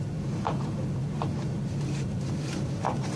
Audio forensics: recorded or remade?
remade